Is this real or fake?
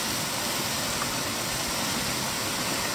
real